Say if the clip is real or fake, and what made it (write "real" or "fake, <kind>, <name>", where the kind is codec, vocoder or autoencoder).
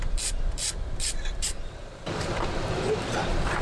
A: fake, vocoder, BigVGAN v2